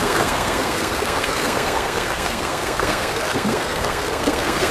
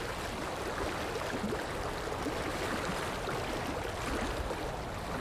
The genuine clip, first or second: second